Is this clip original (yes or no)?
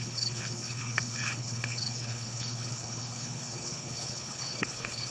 no